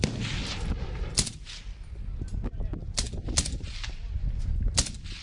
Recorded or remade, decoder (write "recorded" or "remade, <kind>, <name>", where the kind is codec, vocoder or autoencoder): recorded